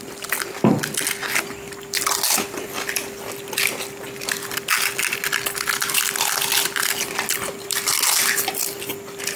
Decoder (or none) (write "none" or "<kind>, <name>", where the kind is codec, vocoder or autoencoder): none